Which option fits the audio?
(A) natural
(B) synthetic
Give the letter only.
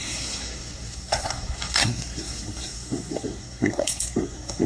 B